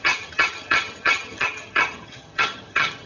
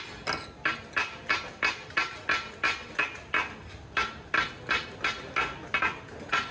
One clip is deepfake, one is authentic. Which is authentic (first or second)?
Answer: second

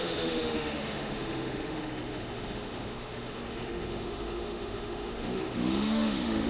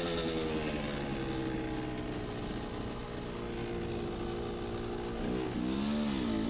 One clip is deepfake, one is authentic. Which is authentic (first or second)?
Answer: second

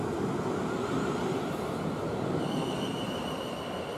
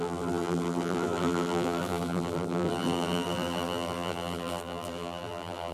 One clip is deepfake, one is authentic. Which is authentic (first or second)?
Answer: first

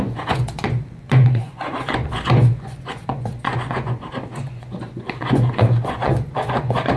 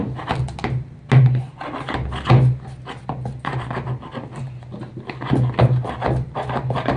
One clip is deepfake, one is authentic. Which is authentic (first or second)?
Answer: second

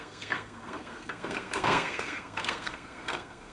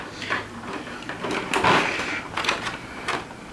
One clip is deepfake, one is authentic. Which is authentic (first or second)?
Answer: second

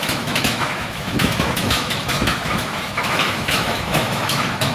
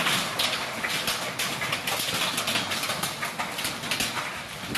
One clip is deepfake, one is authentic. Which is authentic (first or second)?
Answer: second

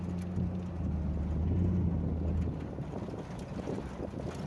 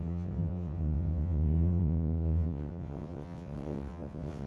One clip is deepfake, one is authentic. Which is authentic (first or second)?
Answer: first